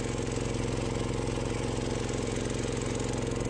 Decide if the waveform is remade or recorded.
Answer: recorded